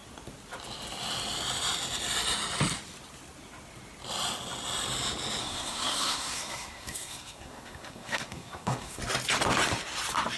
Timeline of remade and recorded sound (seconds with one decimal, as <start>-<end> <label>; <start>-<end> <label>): 0.0-5.4 recorded; 5.4-9.0 remade; 9.0-10.4 recorded